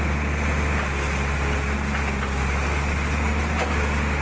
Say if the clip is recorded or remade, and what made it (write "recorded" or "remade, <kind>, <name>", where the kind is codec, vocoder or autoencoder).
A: recorded